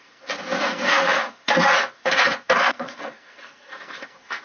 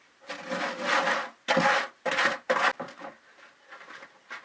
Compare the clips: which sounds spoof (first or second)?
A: first